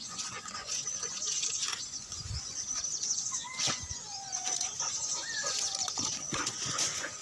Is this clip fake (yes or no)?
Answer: yes